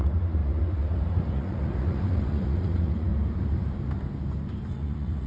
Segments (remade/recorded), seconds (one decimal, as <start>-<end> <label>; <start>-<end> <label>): 0.0-3.1 remade; 3.1-4.7 recorded; 4.7-5.3 remade